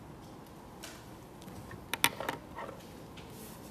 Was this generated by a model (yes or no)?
no